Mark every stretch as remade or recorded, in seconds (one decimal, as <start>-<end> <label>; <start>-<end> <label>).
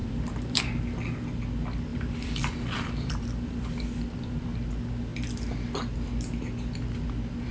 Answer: 0.0-0.6 remade; 0.6-1.9 recorded; 1.9-3.1 remade; 3.1-7.5 recorded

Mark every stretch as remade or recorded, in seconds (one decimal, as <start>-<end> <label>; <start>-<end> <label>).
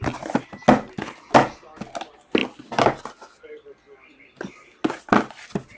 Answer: 0.0-5.8 recorded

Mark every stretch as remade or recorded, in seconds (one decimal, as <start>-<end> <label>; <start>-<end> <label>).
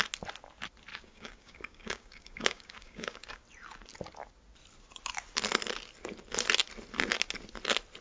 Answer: 0.0-0.9 recorded; 0.9-3.4 remade; 3.4-8.0 recorded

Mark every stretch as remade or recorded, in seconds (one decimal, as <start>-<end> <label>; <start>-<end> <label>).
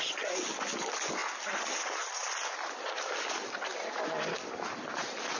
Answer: 0.0-5.4 recorded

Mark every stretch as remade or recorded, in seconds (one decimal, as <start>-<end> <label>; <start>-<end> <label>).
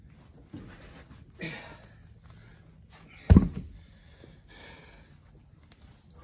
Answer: 0.0-6.2 recorded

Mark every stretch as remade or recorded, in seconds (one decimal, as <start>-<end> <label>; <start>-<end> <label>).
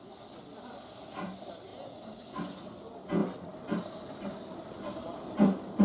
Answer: 0.0-5.8 recorded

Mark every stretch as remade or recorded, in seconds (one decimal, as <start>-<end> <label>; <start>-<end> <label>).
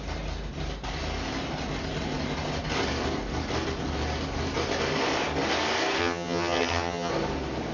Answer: 0.0-6.0 recorded; 6.0-7.1 remade; 7.1-7.7 recorded